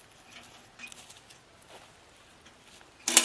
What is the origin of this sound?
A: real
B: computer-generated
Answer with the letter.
A